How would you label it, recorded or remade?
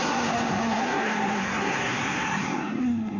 remade